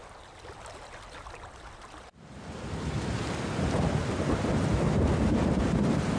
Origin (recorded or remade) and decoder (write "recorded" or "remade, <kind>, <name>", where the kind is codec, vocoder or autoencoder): recorded